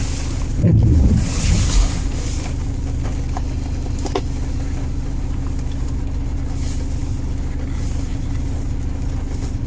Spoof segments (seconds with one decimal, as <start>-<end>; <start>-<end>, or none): none